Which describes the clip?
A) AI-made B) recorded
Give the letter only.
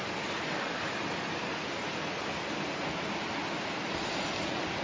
B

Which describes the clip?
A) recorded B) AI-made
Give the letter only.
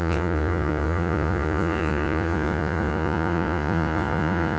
B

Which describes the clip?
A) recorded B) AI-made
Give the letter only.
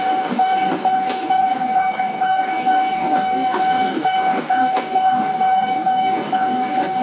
B